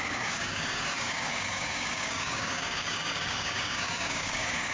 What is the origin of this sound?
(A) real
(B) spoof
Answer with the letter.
B